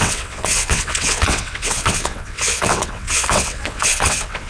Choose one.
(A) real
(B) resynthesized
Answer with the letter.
B